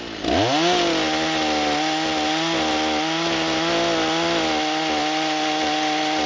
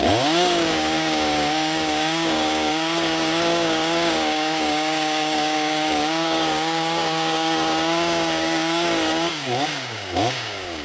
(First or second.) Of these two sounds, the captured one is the first